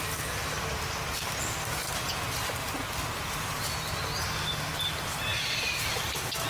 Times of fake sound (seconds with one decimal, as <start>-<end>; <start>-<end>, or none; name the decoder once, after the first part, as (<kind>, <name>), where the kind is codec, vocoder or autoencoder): 0.4-0.9 (vocoder, BigVGAN v2)